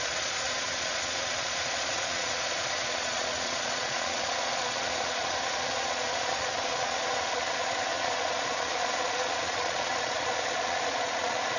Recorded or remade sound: remade